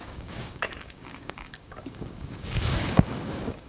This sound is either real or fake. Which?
fake